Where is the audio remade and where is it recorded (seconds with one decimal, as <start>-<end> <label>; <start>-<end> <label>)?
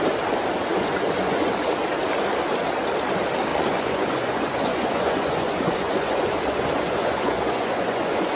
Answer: 0.0-0.7 recorded; 0.7-1.5 remade; 1.5-3.5 recorded; 3.5-8.4 remade